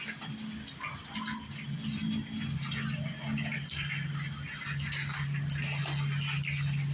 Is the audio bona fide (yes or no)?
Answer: yes